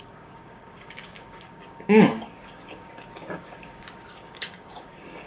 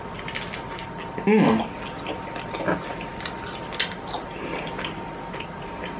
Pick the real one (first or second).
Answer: second